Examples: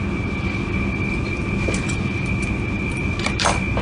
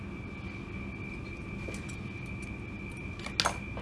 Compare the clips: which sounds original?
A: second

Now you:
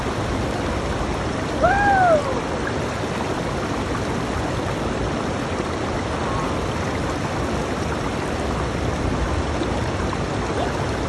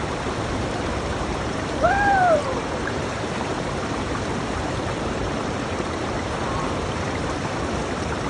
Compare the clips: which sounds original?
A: first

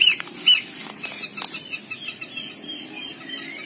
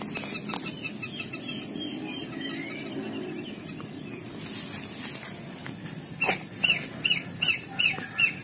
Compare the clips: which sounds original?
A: second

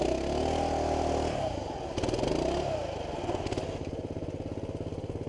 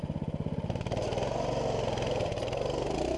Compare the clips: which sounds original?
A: first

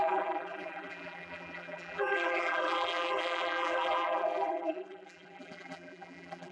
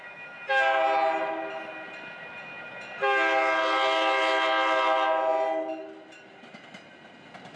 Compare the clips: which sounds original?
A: second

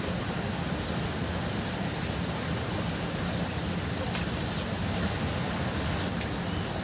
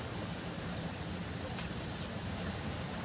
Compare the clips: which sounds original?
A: first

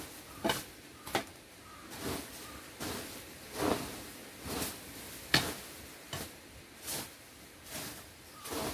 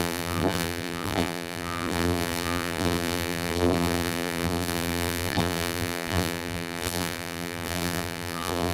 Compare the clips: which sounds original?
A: first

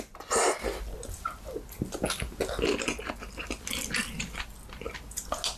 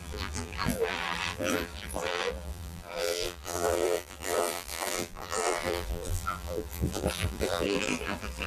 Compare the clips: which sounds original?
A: first